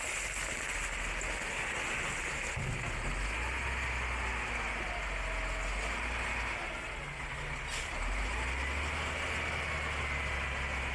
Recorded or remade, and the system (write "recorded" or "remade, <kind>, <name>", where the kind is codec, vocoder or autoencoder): recorded